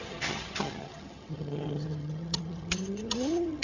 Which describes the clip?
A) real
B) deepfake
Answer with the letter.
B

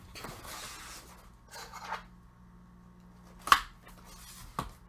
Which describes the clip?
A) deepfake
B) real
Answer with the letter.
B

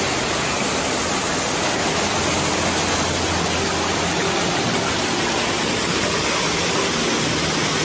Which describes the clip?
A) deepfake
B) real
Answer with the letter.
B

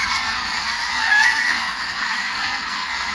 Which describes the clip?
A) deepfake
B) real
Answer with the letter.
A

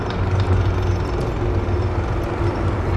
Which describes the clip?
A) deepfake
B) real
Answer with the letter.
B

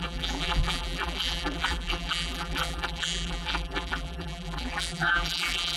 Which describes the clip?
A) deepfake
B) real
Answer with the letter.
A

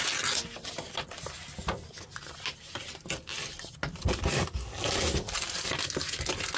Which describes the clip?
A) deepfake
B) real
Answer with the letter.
B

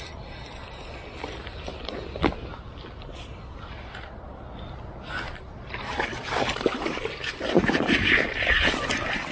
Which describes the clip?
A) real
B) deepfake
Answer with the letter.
A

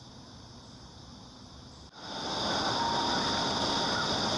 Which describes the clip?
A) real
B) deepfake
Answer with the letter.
A